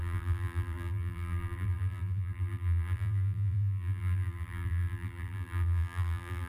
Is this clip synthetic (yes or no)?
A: yes